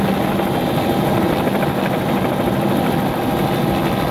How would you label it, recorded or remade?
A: recorded